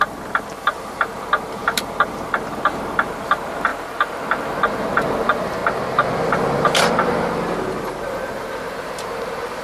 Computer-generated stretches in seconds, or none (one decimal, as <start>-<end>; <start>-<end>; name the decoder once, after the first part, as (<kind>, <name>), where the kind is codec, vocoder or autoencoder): 0.0-5.6 (vocoder, BigVGAN v2); 8.0-9.6